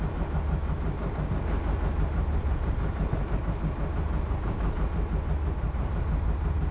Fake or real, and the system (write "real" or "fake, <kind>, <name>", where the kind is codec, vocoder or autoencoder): real